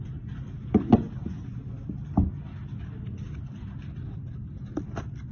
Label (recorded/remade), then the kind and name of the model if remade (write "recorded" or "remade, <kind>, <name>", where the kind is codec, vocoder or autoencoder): recorded